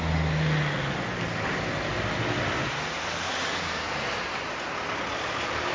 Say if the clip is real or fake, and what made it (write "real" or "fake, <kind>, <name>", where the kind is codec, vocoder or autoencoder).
real